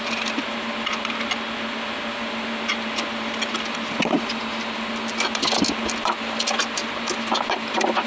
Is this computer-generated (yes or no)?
yes